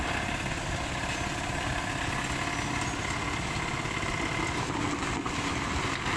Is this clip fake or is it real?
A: real